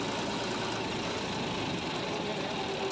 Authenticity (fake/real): real